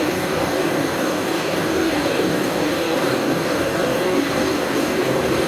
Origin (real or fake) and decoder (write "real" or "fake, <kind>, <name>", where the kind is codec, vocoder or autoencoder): fake, codec, DAC